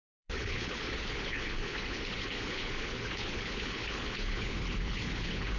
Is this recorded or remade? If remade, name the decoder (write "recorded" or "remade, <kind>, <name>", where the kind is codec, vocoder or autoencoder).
remade, codec, HILCodec